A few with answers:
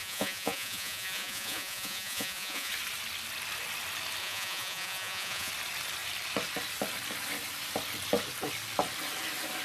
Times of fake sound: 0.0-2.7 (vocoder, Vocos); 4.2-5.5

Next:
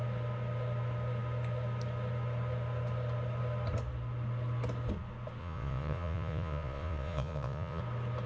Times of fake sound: 5.4-7.8 (vocoder, Vocos)

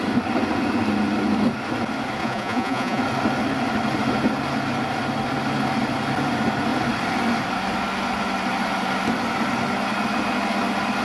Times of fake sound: 2.2-3.0 (vocoder, Vocos)

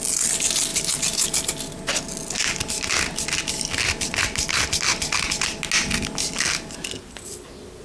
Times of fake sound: none

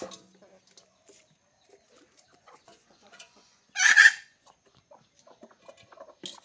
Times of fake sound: 2.3-4.5 (vocoder, Vocos)

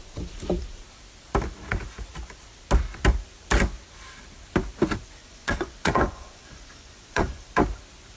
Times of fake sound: 5.2-7.4 (vocoder, Vocos)

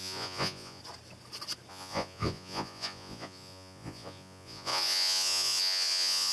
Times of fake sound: 0.0-0.8 (vocoder, Vocos); 1.7-6.3

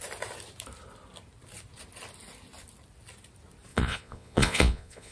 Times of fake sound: 3.7-5.1 (vocoder, Vocos)